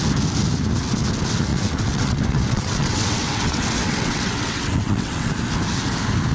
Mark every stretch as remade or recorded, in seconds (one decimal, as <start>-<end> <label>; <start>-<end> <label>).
0.0-1.5 recorded; 1.5-5.3 remade; 5.3-6.3 recorded

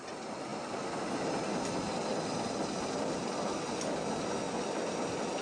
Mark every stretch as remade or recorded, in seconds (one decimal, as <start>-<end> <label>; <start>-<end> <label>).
0.0-5.4 recorded

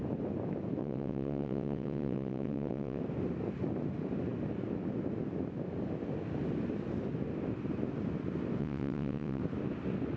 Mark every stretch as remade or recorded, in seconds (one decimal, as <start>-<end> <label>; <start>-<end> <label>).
0.0-0.8 recorded; 0.8-3.0 remade; 3.0-8.6 recorded; 8.6-9.4 remade; 9.4-10.2 recorded

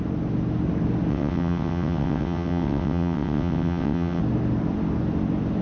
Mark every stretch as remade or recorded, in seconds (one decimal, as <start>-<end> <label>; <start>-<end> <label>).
0.0-1.1 recorded; 1.1-4.2 remade; 4.2-5.6 recorded